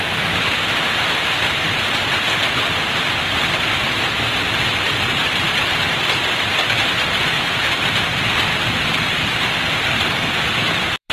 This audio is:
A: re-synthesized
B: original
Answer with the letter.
A